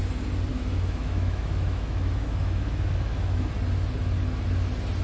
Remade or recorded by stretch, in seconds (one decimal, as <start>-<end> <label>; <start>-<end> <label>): 0.0-0.5 recorded; 0.5-3.5 remade; 3.5-5.0 recorded